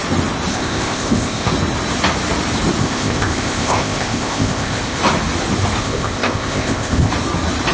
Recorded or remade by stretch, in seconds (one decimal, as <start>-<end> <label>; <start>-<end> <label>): 0.0-0.5 recorded; 0.5-1.5 remade; 1.5-2.8 recorded; 2.8-5.0 remade; 5.0-5.8 recorded; 5.8-7.1 remade; 7.1-7.7 recorded

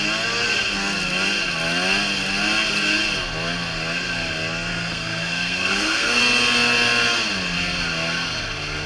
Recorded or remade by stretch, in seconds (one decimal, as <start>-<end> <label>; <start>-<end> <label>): 0.0-4.7 recorded; 4.7-6.2 remade; 6.2-8.9 recorded